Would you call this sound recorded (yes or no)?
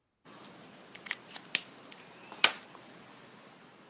yes